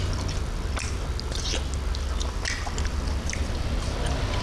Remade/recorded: recorded